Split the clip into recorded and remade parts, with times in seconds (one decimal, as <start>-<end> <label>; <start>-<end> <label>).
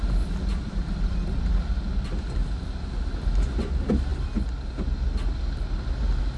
0.0-0.5 recorded; 0.5-1.8 remade; 1.8-6.4 recorded